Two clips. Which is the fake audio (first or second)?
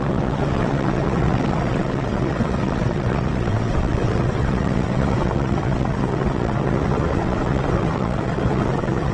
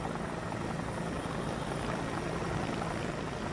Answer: first